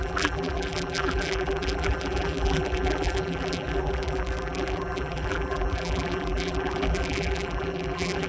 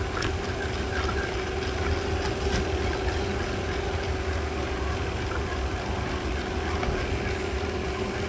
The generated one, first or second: first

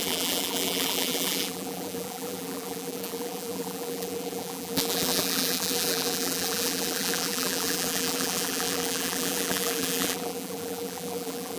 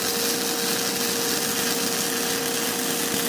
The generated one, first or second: first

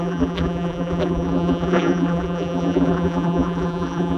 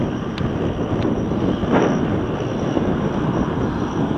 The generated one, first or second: first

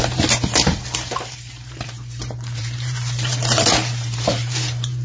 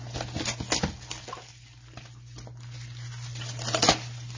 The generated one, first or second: first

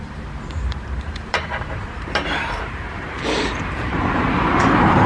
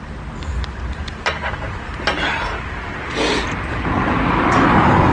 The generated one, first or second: first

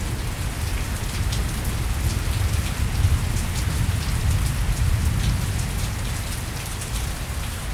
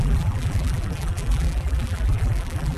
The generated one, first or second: second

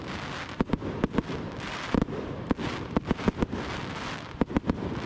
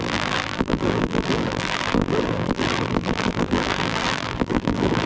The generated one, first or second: second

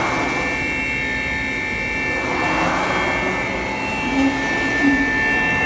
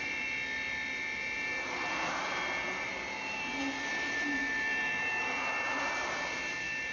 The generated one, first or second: second